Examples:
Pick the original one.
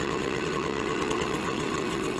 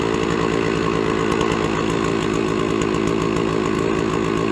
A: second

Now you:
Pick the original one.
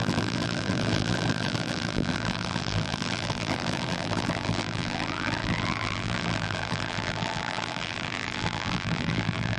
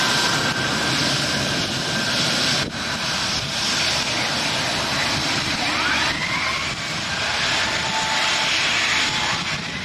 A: second